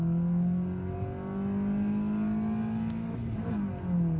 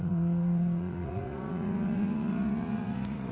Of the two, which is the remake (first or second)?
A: second